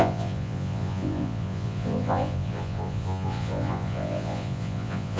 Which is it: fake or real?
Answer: fake